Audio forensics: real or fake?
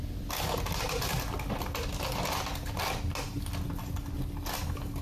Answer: real